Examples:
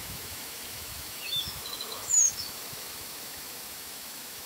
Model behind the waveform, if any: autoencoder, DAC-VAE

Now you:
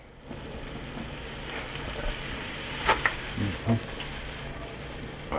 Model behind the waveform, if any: none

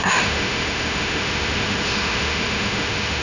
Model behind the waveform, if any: autoencoder, DAC-VAE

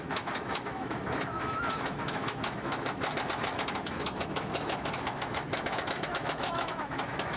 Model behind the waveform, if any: autoencoder, DAC-VAE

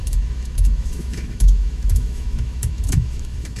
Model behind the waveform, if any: autoencoder, DAC-VAE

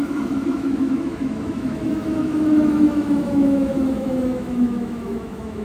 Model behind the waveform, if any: autoencoder, DAC-VAE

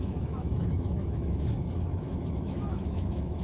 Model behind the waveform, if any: autoencoder, DAC-VAE